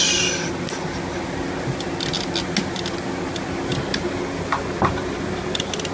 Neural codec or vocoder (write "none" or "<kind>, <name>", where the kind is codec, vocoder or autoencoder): none